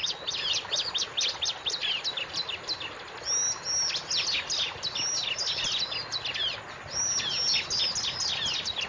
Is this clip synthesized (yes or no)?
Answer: no